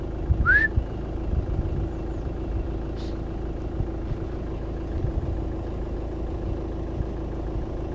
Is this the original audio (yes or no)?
yes